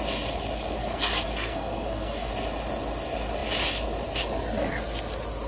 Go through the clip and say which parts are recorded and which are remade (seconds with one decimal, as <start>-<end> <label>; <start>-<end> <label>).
0.0-0.8 recorded; 0.8-2.3 remade; 2.3-5.5 recorded